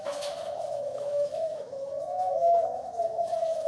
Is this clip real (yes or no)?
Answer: no